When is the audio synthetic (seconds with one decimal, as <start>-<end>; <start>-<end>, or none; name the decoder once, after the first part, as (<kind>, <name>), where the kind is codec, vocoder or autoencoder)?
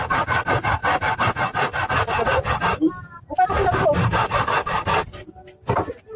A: 0.0-4.9 (vocoder, BigVGAN v2)